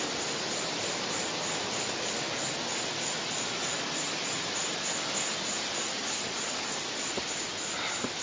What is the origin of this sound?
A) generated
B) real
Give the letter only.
B